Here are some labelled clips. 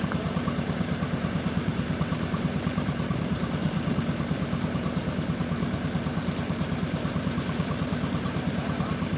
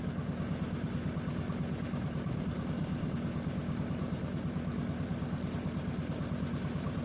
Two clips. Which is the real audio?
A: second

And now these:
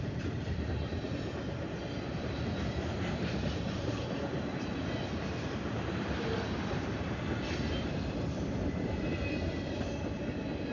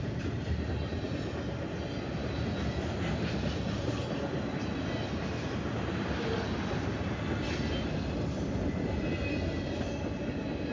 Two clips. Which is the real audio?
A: second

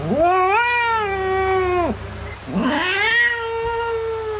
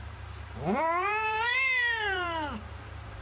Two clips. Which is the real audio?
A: first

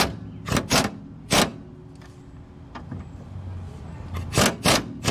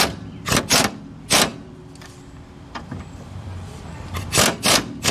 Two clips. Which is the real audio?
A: first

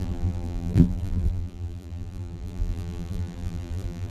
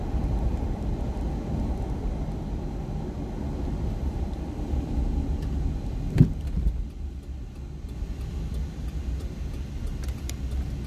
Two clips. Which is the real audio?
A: second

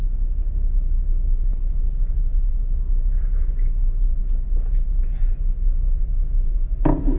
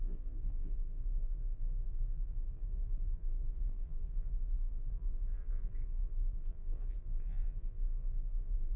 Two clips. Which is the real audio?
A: first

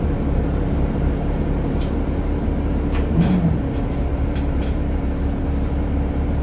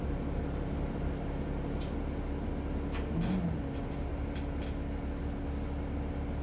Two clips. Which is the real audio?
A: second